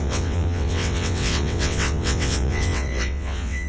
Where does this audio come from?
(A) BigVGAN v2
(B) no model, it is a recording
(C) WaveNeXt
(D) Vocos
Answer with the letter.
C